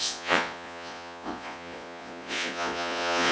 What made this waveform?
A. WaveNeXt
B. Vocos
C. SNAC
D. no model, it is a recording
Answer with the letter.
B